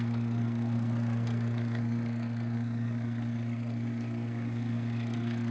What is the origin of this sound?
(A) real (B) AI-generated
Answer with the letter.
B